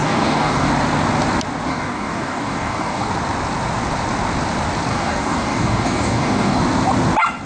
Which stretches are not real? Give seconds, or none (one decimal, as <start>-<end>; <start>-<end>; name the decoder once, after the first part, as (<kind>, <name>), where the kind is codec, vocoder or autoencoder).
0.0-0.7 (codec, DAC); 1.7-3.1; 4.9-6.6